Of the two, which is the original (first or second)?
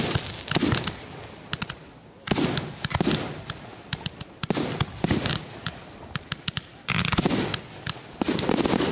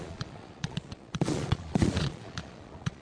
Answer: first